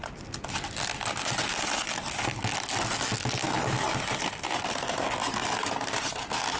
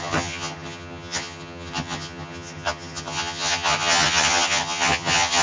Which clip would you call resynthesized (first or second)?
second